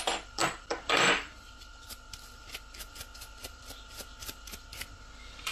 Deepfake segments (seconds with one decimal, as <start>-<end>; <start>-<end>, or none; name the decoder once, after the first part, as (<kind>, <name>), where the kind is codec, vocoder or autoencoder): 0.0-5.5 (vocoder, BigVGAN v2)